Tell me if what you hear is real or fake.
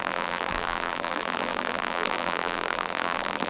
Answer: fake